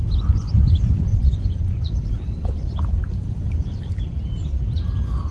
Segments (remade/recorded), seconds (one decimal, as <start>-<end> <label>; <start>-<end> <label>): 0.0-1.1 recorded; 1.1-1.9 remade; 1.9-5.3 recorded